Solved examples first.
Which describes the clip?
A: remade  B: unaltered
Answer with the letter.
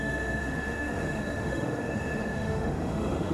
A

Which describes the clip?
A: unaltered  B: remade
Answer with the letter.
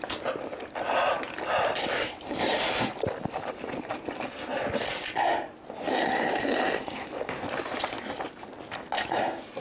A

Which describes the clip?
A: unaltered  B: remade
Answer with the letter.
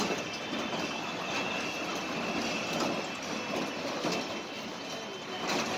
A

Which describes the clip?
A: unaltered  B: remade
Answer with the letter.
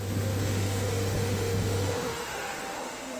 B